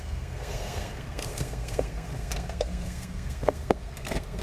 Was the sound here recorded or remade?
remade